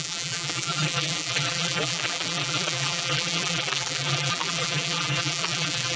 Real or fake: fake